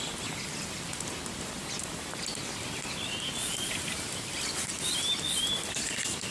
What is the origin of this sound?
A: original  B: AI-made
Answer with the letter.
A